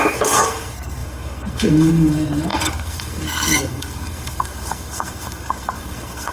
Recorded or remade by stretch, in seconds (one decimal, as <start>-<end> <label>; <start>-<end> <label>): 0.0-6.3 remade